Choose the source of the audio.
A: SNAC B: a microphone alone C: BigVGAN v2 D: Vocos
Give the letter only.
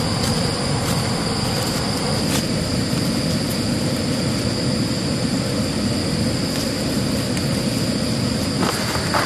B